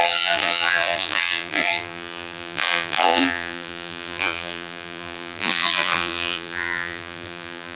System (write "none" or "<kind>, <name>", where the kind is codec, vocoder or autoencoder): vocoder, BigVGAN v2